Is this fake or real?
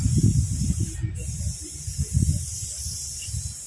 real